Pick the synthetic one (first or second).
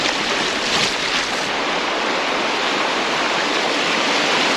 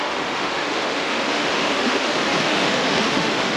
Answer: second